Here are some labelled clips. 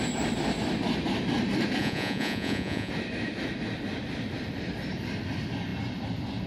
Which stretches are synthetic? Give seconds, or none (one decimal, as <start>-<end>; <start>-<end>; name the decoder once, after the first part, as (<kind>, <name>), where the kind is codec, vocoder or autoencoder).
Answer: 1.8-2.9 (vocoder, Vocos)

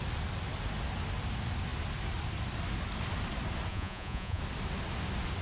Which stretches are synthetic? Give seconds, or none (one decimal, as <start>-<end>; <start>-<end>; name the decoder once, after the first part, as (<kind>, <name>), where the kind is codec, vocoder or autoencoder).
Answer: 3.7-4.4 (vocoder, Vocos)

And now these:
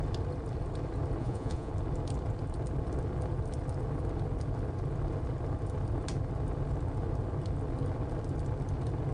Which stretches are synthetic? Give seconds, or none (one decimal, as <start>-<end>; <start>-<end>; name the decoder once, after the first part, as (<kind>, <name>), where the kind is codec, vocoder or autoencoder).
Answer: 1.2-1.7 (vocoder, Vocos)